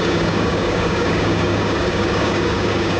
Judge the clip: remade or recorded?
remade